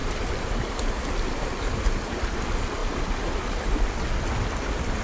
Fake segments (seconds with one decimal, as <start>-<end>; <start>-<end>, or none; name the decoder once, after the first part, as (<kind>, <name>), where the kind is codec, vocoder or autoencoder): none